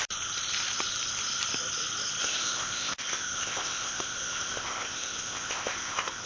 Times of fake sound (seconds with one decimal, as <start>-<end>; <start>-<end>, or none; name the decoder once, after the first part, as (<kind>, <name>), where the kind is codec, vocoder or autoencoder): 2.2-6.3 (codec, ZipCodec)